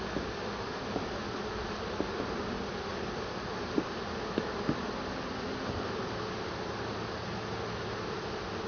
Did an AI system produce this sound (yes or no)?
no